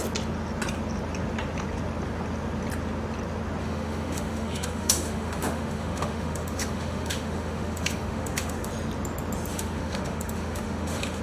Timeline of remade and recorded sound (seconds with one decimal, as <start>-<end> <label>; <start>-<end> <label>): 0.0-3.6 recorded; 3.6-8.7 remade; 8.7-9.5 recorded; 9.5-11.2 remade